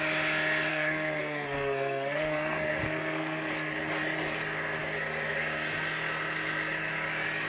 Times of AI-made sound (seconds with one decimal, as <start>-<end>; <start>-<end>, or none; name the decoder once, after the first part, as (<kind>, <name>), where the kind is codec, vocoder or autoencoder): 0.7-3.5 (codec, SNAC)